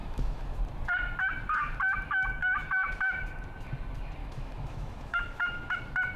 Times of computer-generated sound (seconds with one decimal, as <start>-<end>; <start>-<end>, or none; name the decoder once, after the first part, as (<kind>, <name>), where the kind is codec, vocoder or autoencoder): 0.0-0.6 (autoencoder, DAC-VAE); 2.4-2.9; 4.2-5.8